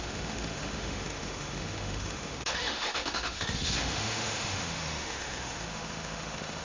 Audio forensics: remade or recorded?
remade